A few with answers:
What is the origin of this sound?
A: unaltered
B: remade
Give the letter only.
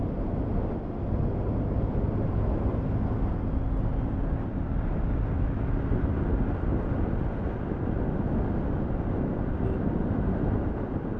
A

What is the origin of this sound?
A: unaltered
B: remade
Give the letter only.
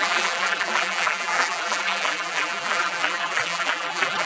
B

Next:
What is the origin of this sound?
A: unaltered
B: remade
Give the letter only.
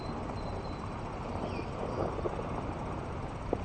A